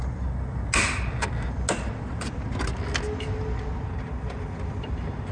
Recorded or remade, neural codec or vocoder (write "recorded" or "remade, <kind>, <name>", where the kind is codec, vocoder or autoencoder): recorded